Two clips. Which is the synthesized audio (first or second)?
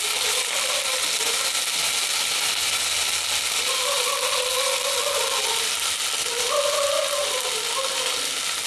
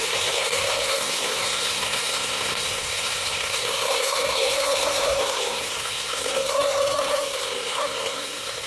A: second